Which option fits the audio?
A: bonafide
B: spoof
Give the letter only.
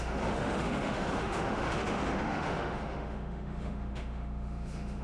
B